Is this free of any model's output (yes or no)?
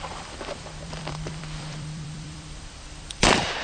no